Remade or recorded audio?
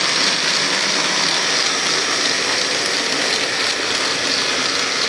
recorded